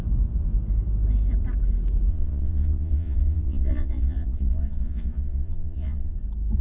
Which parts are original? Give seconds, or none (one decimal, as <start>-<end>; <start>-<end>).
0.0-2.1; 6.1-6.6